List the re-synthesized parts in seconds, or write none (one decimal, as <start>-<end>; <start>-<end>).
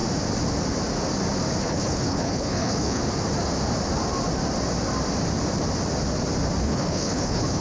1.6-3.0; 6.6-7.6